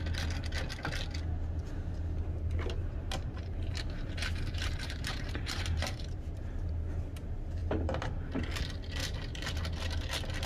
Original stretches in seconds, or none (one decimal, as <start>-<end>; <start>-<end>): 0.0-2.8; 6.7-10.5